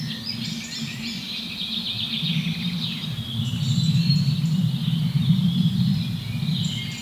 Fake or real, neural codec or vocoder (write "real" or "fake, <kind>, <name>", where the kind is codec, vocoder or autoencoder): real